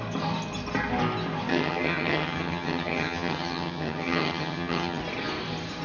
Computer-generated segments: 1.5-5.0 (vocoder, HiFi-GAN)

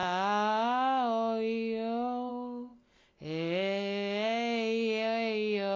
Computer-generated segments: none

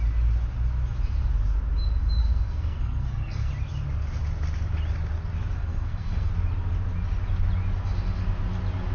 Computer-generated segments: 2.2-3.5 (codec, SNAC); 5.6-6.3

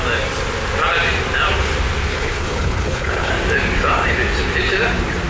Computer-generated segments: 2.1-3.3 (codec, HILCodec)